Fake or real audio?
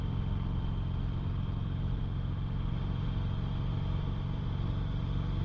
real